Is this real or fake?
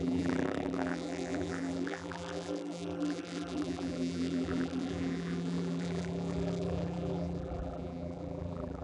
fake